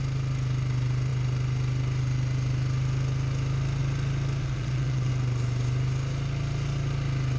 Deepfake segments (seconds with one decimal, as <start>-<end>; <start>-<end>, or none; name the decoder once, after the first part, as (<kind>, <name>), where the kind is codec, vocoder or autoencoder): 4.4-5.1 (vocoder, Vocos)

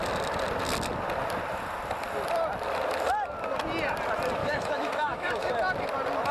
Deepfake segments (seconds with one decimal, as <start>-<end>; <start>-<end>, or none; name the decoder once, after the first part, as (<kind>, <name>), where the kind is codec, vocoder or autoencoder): 4.4-5.5 (autoencoder, DAC-VAE)

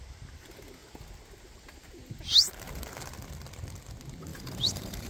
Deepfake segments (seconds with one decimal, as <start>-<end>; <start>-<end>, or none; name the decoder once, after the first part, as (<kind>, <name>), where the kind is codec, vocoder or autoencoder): 4.3-5.1 (vocoder, BigVGAN v2)

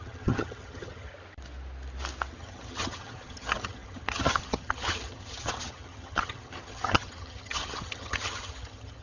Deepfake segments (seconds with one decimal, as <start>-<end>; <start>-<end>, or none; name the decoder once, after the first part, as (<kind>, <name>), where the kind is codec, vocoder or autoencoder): 0.0-1.1 (vocoder, HiFi-GAN); 2.3-9.0

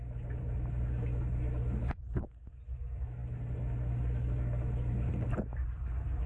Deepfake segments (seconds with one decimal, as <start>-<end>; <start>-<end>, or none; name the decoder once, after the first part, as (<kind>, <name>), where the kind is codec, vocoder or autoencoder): 3.2-4.9 (vocoder, BigVGAN v2); 5.5-6.3

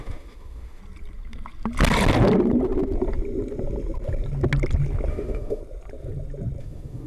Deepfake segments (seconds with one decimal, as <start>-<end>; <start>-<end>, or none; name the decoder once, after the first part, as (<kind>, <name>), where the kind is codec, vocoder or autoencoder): 0.0-0.8 (autoencoder, DAC-VAE); 5.1-5.6; 6.6-7.1

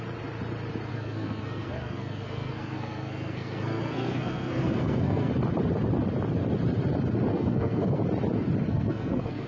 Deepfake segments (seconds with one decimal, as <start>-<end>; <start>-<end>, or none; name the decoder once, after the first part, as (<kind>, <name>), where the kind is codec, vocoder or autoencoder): 0.9-5.3 (codec, SNAC); 7.3-8.0; 8.7-9.5